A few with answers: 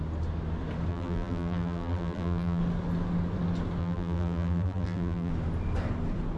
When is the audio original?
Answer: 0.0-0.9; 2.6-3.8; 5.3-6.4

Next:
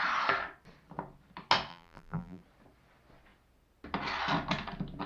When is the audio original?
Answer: 0.0-1.7; 2.4-5.1